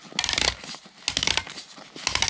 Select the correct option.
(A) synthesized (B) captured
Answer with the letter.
B